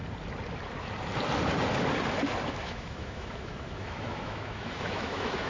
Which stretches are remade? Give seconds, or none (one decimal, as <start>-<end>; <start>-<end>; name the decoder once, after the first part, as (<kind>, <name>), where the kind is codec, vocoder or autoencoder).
2.5-5.5 (autoencoder, DAC-VAE)